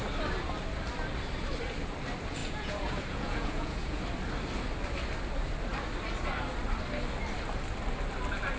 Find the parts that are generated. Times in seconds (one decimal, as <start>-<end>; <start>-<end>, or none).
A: 2.4-4.0